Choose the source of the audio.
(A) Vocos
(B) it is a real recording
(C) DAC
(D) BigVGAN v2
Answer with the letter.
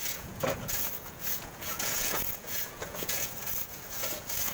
A